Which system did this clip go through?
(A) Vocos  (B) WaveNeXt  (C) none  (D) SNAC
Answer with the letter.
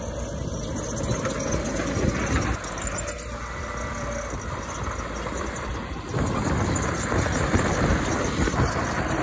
C